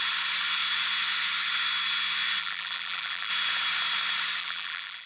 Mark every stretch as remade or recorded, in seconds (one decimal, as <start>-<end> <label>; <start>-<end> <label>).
0.0-2.4 recorded; 2.4-3.3 remade; 3.3-4.4 recorded; 4.4-5.1 remade